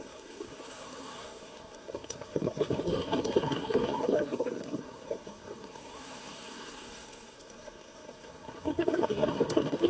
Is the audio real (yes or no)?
no